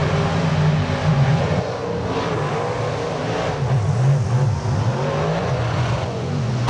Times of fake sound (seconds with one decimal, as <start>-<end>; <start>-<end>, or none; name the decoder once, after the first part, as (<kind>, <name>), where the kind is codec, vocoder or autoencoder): 1.1-1.8 (vocoder, Vocos); 5.4-6.7